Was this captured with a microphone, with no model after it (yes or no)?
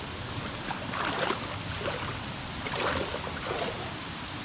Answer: yes